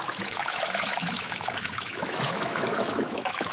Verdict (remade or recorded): remade